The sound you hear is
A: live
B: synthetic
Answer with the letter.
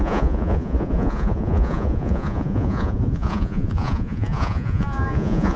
B